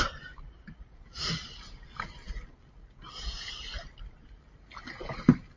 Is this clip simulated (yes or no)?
no